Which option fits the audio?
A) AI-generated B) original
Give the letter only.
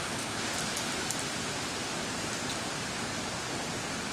B